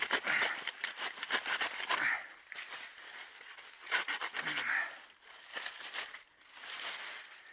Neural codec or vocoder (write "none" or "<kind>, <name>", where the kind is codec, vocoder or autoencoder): none